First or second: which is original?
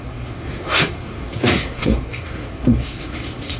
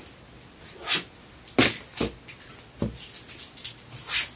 second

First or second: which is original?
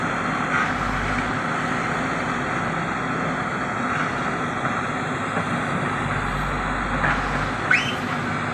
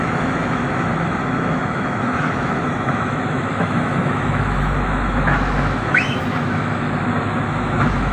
first